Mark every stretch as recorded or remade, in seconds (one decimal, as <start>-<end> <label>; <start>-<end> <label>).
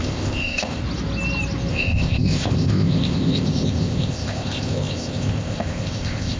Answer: 0.0-0.8 remade; 0.8-1.7 recorded; 1.7-6.4 remade